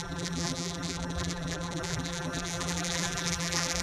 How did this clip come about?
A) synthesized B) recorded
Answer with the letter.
A